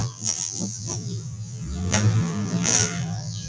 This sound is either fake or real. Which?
fake